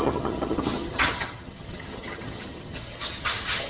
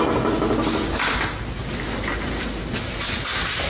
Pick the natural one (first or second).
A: second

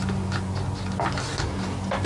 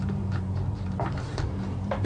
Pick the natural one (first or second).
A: first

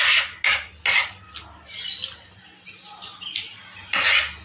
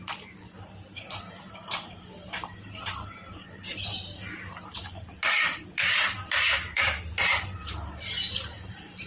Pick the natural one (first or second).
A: first